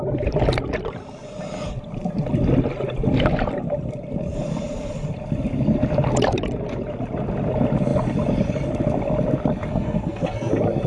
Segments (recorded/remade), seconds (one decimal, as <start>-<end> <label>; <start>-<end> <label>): 0.0-9.7 recorded; 9.7-10.5 remade; 10.5-10.9 recorded